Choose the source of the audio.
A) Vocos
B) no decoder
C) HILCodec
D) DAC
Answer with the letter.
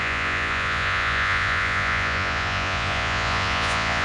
A